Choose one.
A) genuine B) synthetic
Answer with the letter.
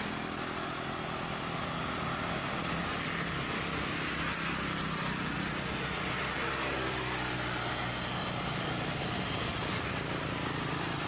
A